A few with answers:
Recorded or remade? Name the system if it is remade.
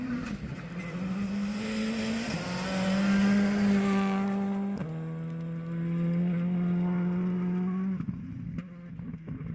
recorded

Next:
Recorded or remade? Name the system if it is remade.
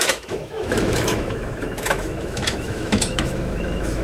remade, autoencoder, DAC-VAE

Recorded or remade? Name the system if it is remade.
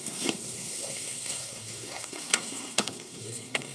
remade, codec, SNAC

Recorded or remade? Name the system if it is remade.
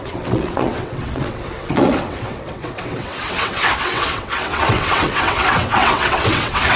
remade, vocoder, WaveNeXt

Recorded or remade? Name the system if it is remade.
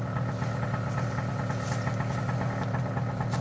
recorded